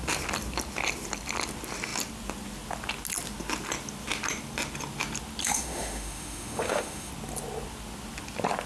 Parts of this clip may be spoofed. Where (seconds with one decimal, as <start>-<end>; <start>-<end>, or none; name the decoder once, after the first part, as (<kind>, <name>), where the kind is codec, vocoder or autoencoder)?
5.4-7.1 (autoencoder, DAC-VAE)